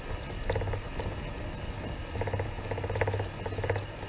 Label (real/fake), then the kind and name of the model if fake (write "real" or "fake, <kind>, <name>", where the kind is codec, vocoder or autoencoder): real